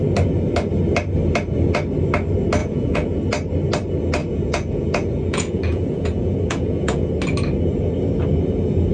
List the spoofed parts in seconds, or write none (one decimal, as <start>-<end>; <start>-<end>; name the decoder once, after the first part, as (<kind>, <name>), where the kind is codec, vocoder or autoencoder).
2.6-3.2 (vocoder, Vocos); 4.2-7.1